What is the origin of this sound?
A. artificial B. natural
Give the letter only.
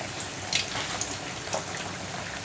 B